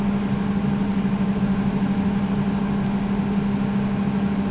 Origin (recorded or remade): recorded